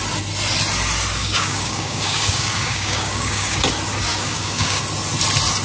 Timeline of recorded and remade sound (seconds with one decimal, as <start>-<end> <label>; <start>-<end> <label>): 0.0-1.2 recorded; 1.2-3.6 remade; 3.6-4.1 recorded; 4.1-4.8 remade; 4.8-5.6 recorded